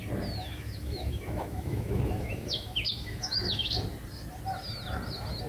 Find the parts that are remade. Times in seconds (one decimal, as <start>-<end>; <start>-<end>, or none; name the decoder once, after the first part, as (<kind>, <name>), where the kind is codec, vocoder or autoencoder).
0.4-3.7 (autoencoder, DAC-VAE)